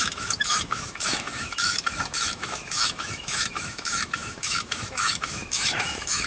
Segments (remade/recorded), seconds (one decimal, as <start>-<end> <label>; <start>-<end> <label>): 0.0-6.3 remade